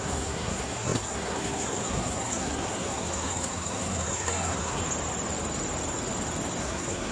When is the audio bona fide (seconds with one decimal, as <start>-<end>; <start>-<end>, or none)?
4.8-6.6